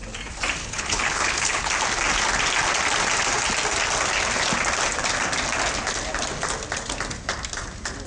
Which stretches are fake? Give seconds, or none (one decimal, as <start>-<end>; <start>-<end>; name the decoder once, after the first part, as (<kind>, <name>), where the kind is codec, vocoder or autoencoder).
0.6-1.7 (codec, HILCodec)

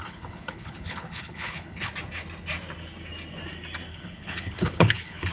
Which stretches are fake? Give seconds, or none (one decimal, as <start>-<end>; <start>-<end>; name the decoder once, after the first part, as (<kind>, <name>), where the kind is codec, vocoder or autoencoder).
0.0-1.9 (codec, HILCodec); 3.9-5.3

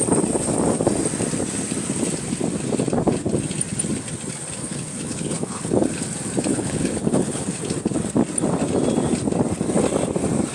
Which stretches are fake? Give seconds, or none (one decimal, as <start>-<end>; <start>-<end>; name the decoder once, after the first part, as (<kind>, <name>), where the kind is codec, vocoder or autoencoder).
4.6-6.0 (codec, HILCodec); 6.5-7.6

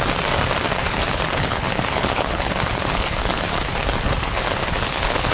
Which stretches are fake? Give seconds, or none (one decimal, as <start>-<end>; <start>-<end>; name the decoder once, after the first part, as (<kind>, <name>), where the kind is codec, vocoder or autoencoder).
0.8-3.7 (codec, HILCodec); 4.2-5.3

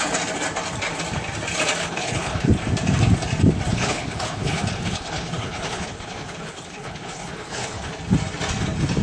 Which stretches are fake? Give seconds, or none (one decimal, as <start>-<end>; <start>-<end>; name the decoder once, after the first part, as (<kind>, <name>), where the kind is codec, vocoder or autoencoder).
1.8-2.5 (codec, HILCodec); 3.7-7.9

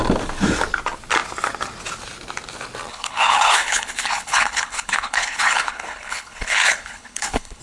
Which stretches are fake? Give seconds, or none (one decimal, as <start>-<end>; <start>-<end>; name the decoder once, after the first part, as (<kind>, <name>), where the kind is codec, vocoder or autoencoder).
2.9-7.6 (codec, HILCodec)

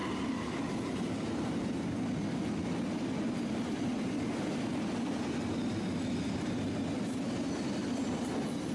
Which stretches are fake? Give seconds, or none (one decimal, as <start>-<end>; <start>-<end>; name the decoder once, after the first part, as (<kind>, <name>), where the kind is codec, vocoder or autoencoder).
none